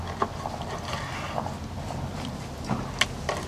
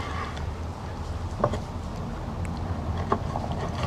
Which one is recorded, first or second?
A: first